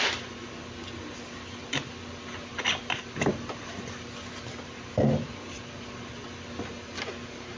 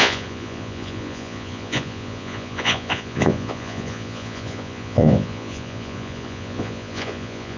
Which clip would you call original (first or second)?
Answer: first